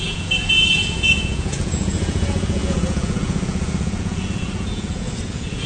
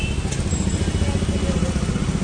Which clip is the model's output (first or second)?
first